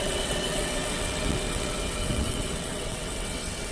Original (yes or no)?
no